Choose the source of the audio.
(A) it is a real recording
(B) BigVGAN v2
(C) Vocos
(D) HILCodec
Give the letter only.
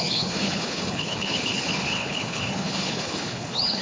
D